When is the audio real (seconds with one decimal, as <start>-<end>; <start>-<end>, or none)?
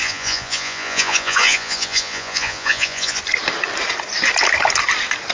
3.2-5.3